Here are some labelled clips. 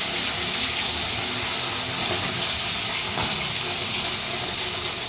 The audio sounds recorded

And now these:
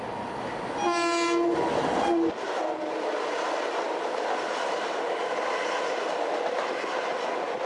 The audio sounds recorded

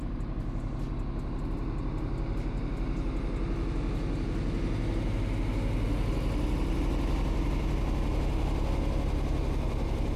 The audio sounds recorded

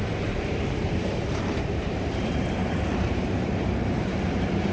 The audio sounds remade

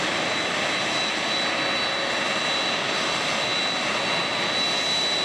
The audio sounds recorded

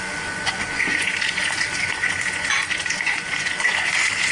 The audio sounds remade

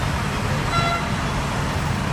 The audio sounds recorded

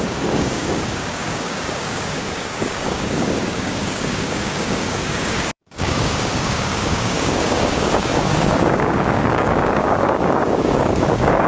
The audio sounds remade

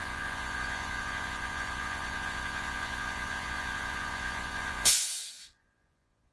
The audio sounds remade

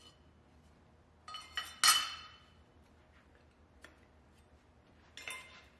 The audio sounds recorded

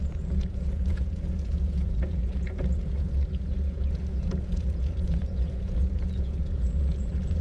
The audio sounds remade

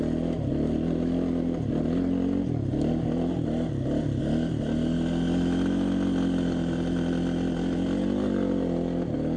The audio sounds recorded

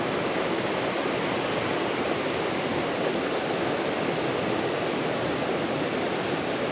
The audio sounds recorded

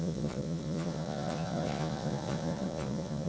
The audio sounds remade